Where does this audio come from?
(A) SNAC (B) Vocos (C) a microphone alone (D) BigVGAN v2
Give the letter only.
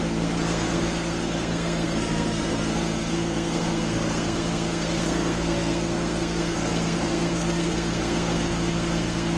A